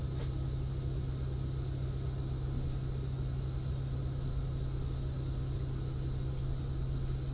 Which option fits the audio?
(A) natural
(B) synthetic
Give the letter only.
A